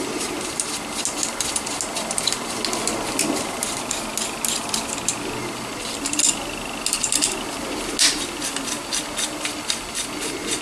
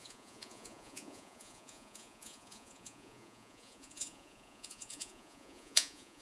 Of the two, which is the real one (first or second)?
first